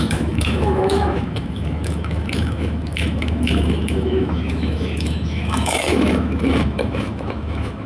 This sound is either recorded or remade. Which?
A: remade